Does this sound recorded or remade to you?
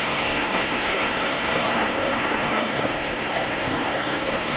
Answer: remade